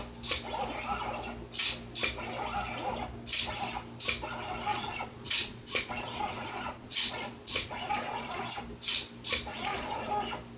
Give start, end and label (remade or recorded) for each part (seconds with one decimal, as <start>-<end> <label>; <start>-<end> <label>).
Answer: 0.0-4.7 recorded; 4.7-8.4 remade; 8.4-9.5 recorded; 9.5-10.1 remade; 10.1-10.6 recorded